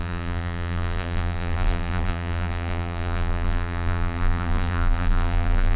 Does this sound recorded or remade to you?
remade